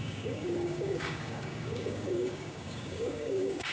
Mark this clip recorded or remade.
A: remade